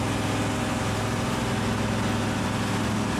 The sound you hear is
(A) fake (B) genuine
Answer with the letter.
B